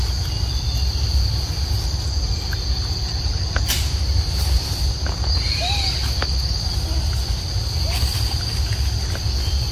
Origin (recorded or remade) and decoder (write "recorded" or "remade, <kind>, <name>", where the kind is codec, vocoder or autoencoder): recorded